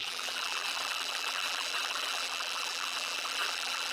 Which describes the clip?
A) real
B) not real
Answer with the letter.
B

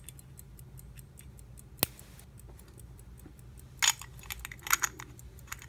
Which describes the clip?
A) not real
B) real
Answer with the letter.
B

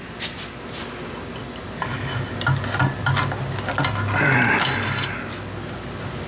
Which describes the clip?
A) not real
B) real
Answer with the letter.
B